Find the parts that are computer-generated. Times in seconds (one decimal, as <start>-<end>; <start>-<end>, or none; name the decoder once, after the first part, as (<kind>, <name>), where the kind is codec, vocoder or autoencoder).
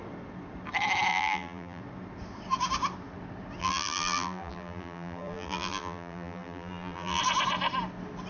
1.1-1.8 (vocoder, BigVGAN v2); 3.6-7.2